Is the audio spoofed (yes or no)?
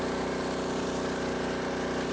no